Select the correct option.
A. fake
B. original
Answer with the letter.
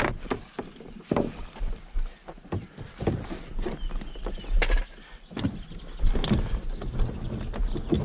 B